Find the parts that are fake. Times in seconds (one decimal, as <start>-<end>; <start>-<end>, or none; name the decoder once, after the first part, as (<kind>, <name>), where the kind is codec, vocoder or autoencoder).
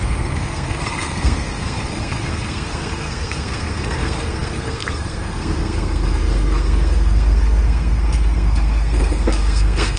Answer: 0.0-10.0 (codec, SNAC)